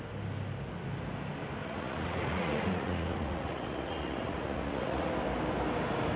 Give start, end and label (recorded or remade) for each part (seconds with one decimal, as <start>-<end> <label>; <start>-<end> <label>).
0.0-1.6 recorded; 1.6-5.1 remade; 5.1-6.2 recorded